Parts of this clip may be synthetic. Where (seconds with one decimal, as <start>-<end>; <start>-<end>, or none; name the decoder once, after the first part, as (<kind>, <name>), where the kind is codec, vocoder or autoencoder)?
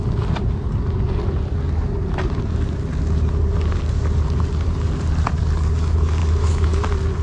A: 6.2-6.8 (autoencoder, DAC-VAE)